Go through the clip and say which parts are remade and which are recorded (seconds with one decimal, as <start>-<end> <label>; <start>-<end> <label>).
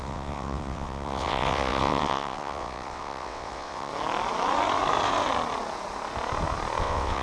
0.0-3.9 remade; 3.9-6.8 recorded; 6.8-7.2 remade